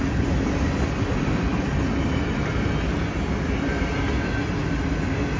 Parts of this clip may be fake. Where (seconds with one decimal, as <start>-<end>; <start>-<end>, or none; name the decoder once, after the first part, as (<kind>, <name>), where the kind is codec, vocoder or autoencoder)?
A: none